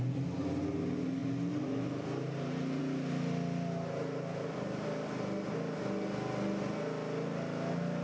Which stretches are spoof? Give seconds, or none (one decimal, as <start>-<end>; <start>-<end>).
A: none